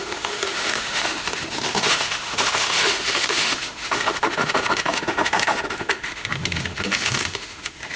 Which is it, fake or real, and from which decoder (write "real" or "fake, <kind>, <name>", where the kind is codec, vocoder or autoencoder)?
fake, autoencoder, DAC-VAE